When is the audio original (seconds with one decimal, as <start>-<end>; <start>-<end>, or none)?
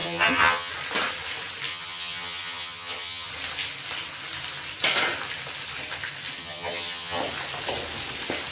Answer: 0.7-1.7; 3.3-6.4; 7.2-8.5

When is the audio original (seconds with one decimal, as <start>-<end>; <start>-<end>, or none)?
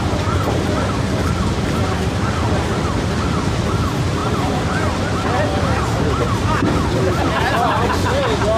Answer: 0.0-4.2; 5.0-8.6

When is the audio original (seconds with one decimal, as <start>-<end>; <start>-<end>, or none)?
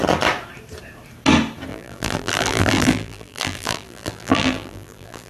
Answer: 0.0-1.7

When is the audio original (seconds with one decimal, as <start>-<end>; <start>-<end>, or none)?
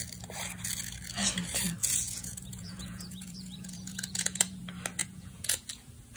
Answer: 0.0-1.8; 4.6-5.0; 5.7-6.2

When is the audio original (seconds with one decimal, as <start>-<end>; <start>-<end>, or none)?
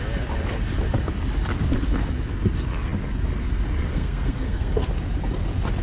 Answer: 0.0-3.9; 4.7-5.8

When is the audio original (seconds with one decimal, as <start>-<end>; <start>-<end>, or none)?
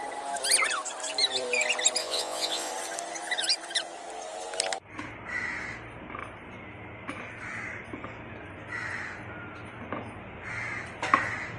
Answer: 0.0-2.0; 2.7-11.6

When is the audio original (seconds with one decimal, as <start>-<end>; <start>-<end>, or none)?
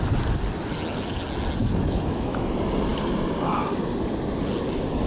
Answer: 0.0-1.6; 2.5-5.1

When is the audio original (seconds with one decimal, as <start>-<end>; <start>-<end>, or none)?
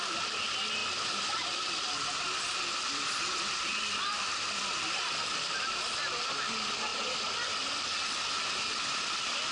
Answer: 6.9-9.1